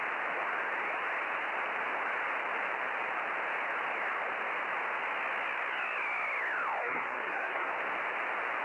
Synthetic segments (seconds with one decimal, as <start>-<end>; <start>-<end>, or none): 6.8-7.7